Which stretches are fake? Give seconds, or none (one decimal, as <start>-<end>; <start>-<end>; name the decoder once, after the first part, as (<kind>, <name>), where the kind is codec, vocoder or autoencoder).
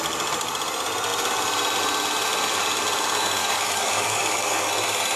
3.4-4.7 (codec, DAC)